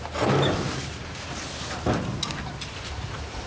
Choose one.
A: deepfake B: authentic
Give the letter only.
B